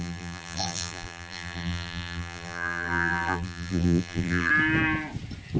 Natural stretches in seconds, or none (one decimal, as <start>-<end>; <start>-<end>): 4.5-5.6